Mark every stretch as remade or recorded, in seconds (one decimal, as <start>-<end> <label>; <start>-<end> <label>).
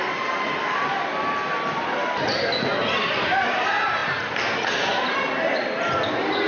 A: 0.0-6.5 recorded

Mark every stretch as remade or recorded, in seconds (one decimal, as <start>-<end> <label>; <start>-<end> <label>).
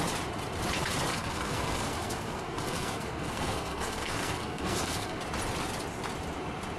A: 0.0-1.1 recorded; 1.1-5.2 remade; 5.2-6.8 recorded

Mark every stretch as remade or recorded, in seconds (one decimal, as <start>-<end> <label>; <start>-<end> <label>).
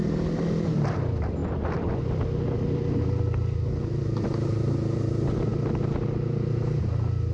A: 0.0-7.3 recorded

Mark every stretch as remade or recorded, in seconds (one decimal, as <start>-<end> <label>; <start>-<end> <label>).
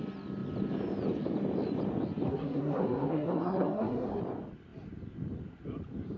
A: 0.0-2.3 recorded; 2.3-4.2 remade; 4.2-6.2 recorded